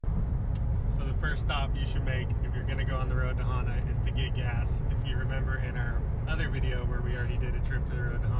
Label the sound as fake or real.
real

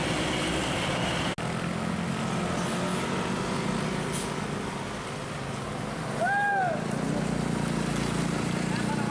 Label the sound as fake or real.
real